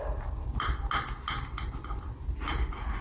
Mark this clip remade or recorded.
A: recorded